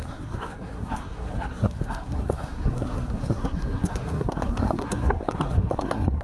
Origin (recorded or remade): remade